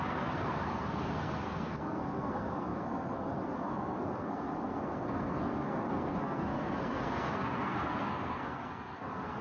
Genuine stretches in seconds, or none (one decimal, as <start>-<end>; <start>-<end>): none